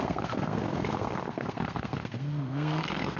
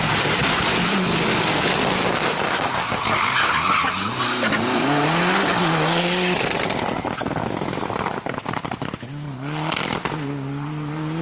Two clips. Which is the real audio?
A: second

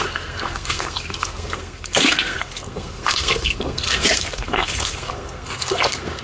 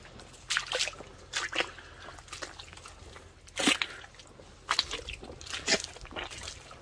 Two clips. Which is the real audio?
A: second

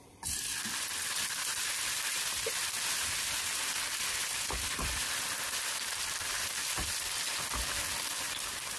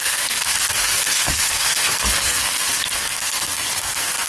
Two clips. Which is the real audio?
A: first